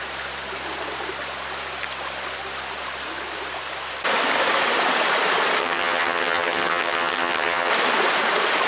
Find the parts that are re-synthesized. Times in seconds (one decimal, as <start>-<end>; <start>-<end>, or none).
5.6-7.7